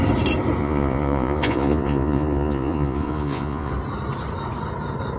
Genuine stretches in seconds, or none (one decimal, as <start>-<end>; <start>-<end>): 0.0-0.6; 3.7-5.2